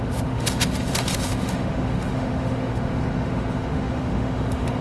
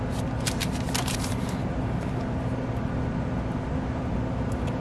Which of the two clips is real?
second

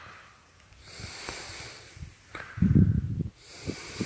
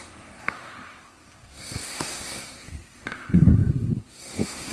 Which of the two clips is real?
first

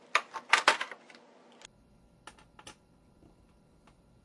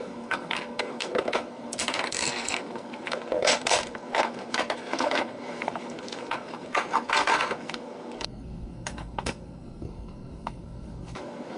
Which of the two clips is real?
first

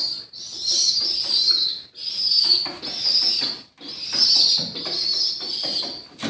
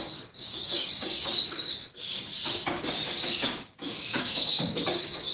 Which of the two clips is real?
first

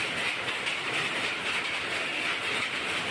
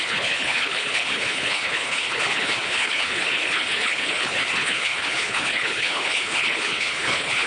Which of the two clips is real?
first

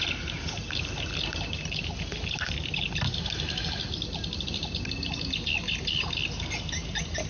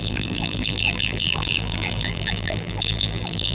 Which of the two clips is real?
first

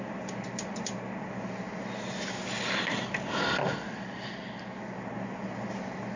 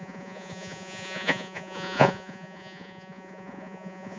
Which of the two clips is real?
first